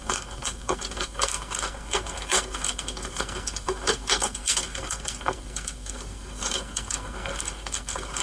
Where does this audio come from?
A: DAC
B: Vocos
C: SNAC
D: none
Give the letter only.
C